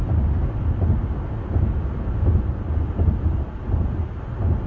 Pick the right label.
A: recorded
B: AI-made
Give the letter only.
A